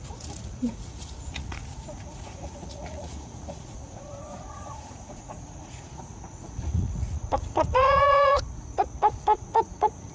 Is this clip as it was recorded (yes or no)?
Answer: no